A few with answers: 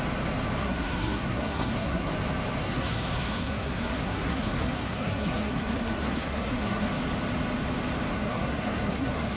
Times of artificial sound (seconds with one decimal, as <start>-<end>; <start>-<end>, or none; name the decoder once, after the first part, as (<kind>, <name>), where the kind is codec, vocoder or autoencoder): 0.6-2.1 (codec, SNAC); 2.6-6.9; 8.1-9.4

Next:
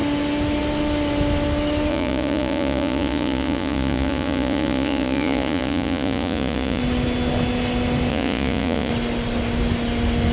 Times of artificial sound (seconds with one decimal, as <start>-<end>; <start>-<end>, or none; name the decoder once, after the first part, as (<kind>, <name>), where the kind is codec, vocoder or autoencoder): 1.9-6.8 (vocoder, Vocos); 8.1-8.9

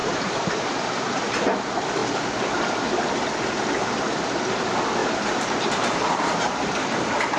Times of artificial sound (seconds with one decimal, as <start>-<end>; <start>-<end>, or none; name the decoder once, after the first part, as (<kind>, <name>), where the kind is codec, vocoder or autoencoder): 0.0-1.2 (vocoder, BigVGAN v2); 5.0-6.4